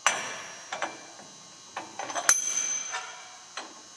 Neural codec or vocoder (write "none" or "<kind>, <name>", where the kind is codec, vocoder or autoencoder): none